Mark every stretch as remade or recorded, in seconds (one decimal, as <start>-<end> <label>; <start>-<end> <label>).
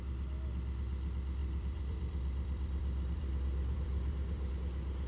0.0-1.4 recorded; 1.4-4.5 remade; 4.5-5.1 recorded